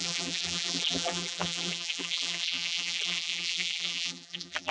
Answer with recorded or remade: remade